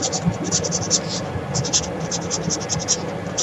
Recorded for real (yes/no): yes